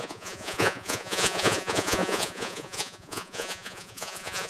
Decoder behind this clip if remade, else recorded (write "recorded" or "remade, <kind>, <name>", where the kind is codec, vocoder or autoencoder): remade, vocoder, Vocos